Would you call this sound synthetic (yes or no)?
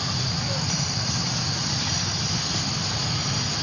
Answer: no